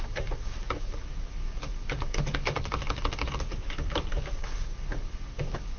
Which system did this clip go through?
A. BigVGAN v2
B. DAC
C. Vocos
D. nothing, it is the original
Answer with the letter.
B